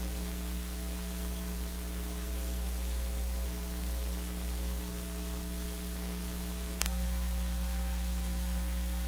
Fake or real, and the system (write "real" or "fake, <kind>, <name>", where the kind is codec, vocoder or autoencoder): fake, codec, SNAC